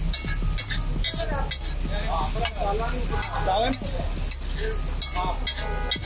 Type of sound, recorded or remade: recorded